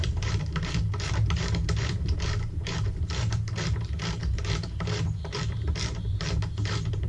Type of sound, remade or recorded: remade